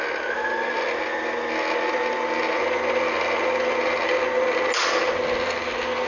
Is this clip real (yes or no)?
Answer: yes